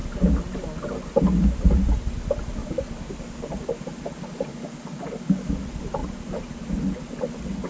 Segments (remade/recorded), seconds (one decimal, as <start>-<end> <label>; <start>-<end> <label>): 0.0-2.6 recorded; 2.6-3.1 remade; 3.1-4.5 recorded; 4.5-5.5 remade; 5.5-7.7 recorded

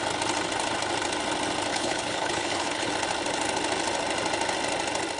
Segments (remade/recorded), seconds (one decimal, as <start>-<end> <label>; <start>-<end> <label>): 0.0-1.7 recorded; 1.7-2.9 remade; 2.9-5.2 recorded

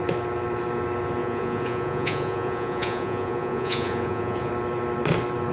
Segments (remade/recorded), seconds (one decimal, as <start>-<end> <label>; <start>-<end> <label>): 0.0-1.2 recorded; 1.2-4.5 remade; 4.5-5.5 recorded

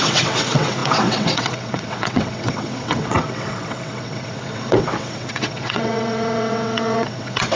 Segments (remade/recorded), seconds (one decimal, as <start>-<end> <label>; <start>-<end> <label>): 0.0-7.6 remade

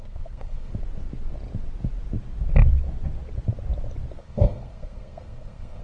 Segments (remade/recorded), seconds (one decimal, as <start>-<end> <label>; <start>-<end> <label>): 0.0-0.7 remade; 0.7-4.2 recorded; 4.2-5.8 remade

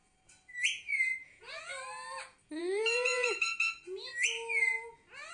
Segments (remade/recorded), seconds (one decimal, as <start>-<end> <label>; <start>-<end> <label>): 0.0-0.7 recorded; 0.7-1.7 remade; 1.7-2.6 recorded; 2.6-4.1 remade; 4.1-5.3 recorded

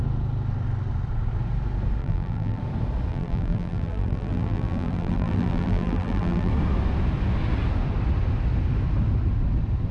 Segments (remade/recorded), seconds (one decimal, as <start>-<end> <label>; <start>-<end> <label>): 0.0-2.0 recorded; 2.0-2.6 remade; 2.6-3.1 recorded; 3.1-6.5 remade; 6.5-9.9 recorded

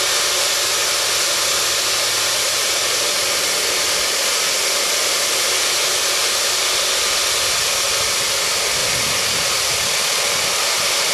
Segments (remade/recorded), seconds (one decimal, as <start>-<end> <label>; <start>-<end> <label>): 0.0-8.8 recorded; 8.8-10.5 remade; 10.5-11.1 recorded